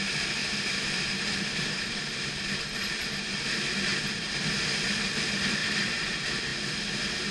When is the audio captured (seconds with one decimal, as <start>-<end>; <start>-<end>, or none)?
0.0-0.4; 2.0-3.9; 4.4-5.6; 6.1-7.3